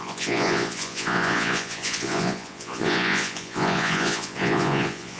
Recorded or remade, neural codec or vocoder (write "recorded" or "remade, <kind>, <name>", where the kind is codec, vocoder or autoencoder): remade, vocoder, Vocos